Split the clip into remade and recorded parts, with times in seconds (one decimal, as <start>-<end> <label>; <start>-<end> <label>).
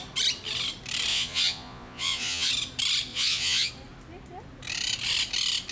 0.0-1.1 recorded; 1.1-2.5 remade; 2.5-3.1 recorded; 3.1-3.7 remade; 3.7-5.7 recorded